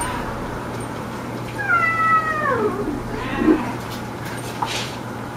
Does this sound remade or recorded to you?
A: remade